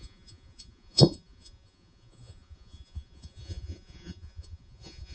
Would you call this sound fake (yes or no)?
yes